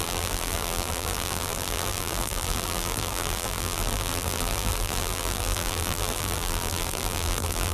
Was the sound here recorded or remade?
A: remade